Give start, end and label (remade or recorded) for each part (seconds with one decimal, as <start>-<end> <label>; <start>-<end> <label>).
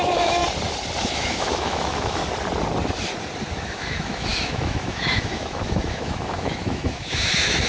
0.0-0.4 remade; 0.4-1.0 recorded; 1.0-2.2 remade; 2.2-3.5 recorded; 3.5-7.7 remade